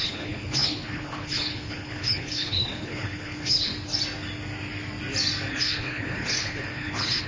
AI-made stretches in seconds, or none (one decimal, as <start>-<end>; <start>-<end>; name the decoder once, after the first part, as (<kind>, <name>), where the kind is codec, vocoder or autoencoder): 0.0-3.7 (codec, HILCodec); 5.5-7.3